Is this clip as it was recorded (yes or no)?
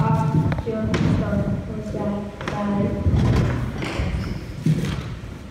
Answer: yes